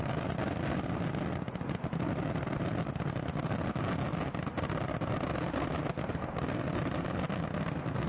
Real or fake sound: real